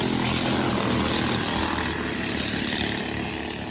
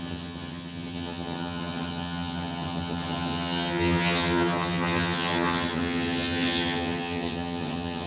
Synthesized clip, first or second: second